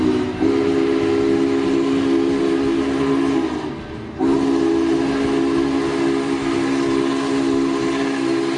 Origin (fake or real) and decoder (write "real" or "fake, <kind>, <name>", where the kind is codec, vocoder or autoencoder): real